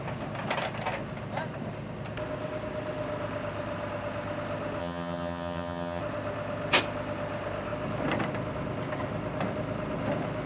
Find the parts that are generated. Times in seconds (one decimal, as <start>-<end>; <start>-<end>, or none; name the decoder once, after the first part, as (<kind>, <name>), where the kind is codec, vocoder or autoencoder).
4.8-6.0 (vocoder, HiFi-GAN)